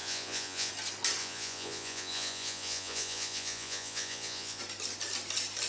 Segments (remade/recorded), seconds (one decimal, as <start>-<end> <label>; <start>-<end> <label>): 0.0-0.7 remade; 0.7-1.2 recorded; 1.2-4.6 remade; 4.6-5.7 recorded